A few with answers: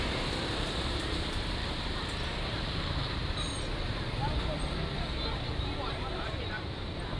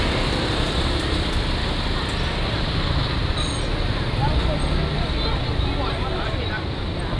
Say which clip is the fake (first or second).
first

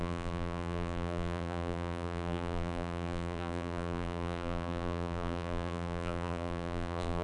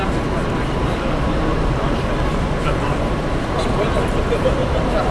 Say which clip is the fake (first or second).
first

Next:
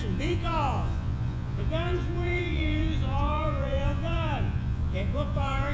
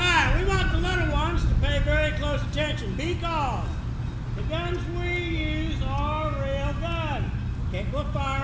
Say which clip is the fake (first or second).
first